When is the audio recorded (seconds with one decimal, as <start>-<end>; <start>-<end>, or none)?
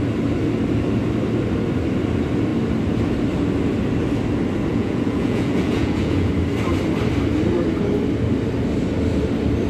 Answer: 0.0-4.7; 6.3-9.7